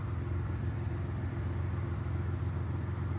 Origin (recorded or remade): recorded